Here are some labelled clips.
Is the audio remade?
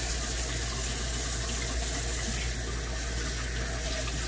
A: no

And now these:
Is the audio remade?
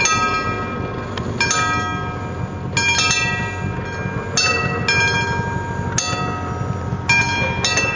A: no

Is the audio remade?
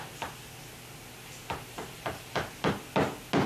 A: no